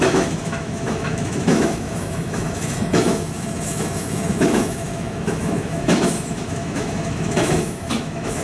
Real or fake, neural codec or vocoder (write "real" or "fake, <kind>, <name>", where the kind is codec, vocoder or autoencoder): fake, autoencoder, DAC-VAE